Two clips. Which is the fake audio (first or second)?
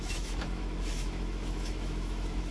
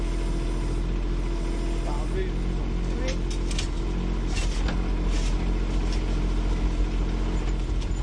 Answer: first